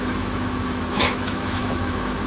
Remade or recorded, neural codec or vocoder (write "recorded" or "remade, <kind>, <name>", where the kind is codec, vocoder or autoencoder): remade, autoencoder, DAC-VAE